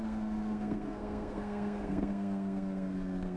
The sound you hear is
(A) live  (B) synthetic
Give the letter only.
B